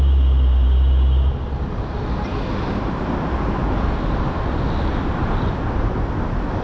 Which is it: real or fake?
real